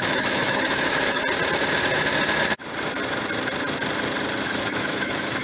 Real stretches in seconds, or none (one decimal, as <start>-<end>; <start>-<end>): 1.2-4.4